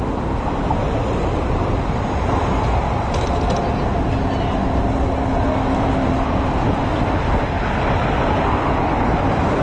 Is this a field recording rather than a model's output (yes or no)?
yes